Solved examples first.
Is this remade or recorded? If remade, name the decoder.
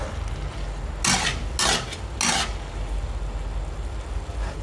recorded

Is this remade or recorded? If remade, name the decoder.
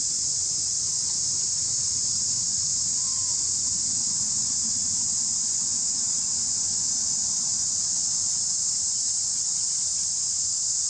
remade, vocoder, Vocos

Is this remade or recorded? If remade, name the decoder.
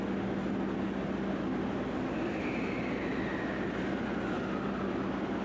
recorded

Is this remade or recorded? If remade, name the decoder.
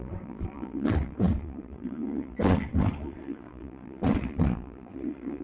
remade, vocoder, WaveNeXt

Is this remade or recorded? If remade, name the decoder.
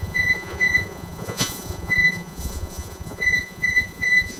remade, vocoder, Vocos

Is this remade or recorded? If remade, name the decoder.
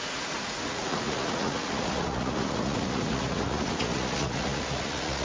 remade, vocoder, Vocos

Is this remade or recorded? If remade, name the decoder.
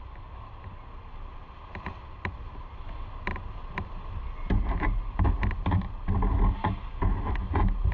recorded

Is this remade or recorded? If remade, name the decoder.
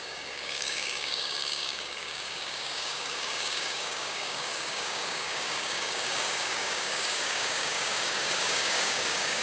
remade, codec, DAC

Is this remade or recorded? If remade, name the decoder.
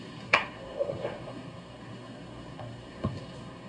remade, codec, SNAC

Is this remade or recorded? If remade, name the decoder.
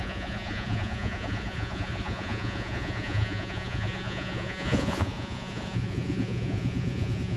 remade, vocoder, Vocos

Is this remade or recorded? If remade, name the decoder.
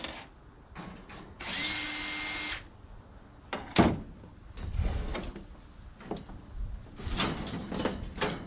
recorded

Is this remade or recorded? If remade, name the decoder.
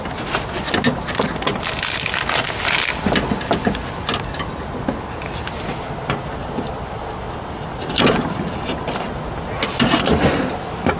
recorded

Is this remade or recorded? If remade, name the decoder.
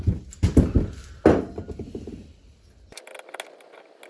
recorded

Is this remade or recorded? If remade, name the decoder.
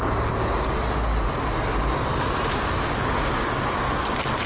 recorded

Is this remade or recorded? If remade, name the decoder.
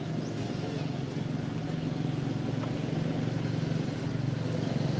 recorded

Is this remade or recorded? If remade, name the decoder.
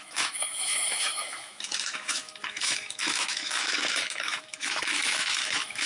remade, autoencoder, DAC-VAE